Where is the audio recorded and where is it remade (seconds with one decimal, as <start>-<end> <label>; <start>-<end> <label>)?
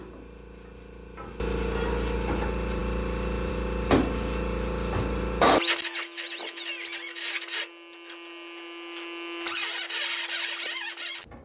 0.0-11.4 recorded